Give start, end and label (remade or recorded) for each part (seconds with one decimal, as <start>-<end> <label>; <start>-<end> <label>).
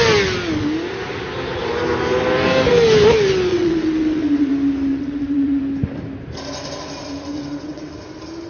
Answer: 0.0-3.5 recorded; 3.5-4.5 remade; 4.5-4.9 recorded; 4.9-5.6 remade; 5.6-7.3 recorded; 7.3-7.9 remade; 7.9-8.5 recorded